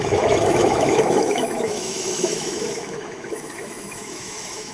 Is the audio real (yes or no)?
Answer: no